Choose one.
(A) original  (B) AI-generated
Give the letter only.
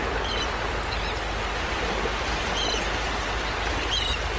B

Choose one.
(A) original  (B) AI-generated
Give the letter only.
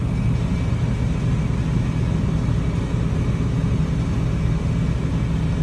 A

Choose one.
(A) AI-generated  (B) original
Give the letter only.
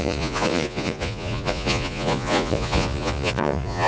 A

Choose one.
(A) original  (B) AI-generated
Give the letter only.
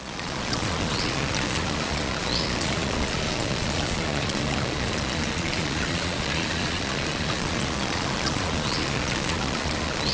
B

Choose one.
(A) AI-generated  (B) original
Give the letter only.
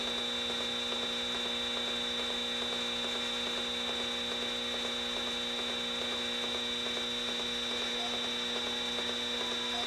B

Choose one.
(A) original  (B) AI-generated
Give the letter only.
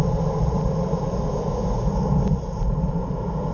A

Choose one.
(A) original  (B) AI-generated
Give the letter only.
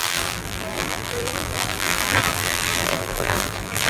B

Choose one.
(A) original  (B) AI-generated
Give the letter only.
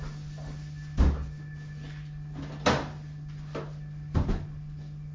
A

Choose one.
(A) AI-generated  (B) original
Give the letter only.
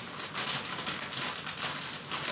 B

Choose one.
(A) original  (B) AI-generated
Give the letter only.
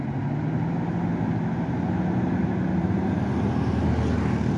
A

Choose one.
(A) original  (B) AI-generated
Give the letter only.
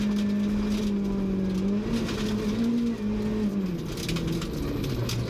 A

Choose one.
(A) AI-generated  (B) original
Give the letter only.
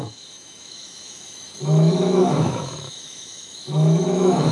A